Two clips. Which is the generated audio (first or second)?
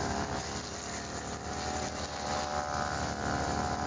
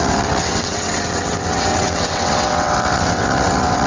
second